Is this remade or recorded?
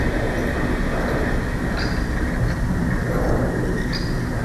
recorded